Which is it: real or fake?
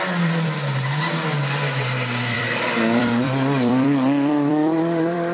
fake